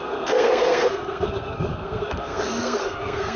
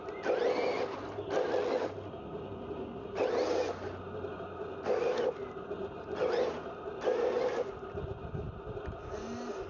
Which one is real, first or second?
second